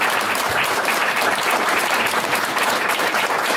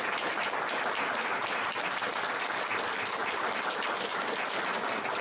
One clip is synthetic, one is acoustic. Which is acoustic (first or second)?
second